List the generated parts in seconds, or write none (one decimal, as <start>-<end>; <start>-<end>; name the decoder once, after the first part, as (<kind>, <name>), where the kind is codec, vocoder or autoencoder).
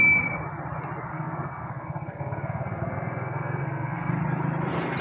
1.1-4.1 (codec, SNAC)